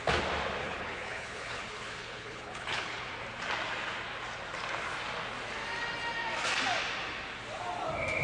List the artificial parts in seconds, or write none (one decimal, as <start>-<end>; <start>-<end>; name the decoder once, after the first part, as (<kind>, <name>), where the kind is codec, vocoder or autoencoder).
0.6-3.1 (codec, HILCodec)